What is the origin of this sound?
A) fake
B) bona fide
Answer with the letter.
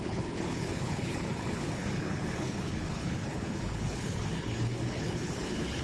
A